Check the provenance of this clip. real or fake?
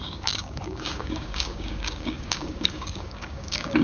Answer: fake